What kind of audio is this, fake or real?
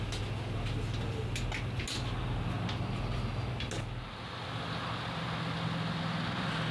real